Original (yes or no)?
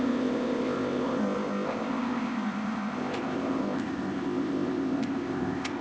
no